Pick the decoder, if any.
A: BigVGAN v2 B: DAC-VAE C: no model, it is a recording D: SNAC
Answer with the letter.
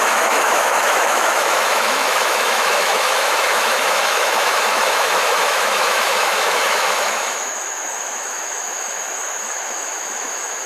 B